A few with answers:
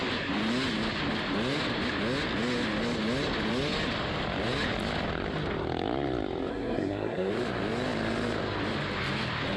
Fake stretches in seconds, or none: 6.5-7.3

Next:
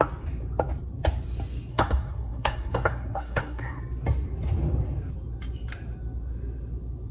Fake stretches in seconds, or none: 1.7-3.8

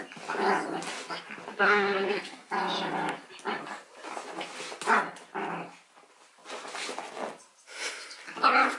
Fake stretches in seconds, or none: 1.5-2.5

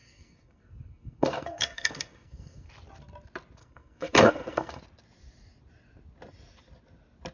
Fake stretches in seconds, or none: 0.0-2.7; 3.6-4.8

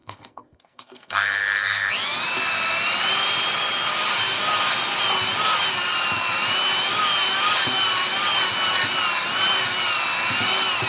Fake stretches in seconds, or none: 0.0-1.9